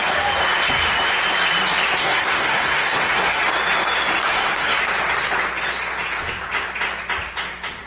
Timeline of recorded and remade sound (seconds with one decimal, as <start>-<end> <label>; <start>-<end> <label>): 0.0-2.0 recorded; 2.0-3.4 remade; 3.4-4.2 recorded; 4.2-4.8 remade; 4.8-7.9 recorded